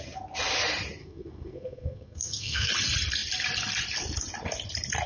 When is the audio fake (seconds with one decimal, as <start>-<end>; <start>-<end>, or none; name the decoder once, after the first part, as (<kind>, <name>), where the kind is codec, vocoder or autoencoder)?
1.0-2.7 (codec, SNAC)